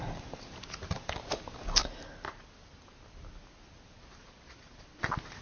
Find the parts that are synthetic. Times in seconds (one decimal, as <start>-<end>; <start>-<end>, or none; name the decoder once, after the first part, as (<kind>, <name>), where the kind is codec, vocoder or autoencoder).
none